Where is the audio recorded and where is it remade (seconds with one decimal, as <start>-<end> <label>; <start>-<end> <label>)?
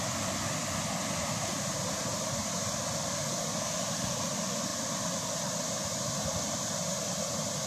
0.0-1.2 recorded; 1.2-2.0 remade; 2.0-7.7 recorded